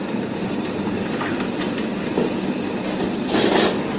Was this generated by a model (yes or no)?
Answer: yes